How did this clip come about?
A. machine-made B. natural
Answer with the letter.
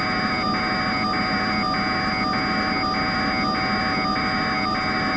B